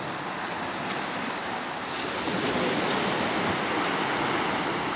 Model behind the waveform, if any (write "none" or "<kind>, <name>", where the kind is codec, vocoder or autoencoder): none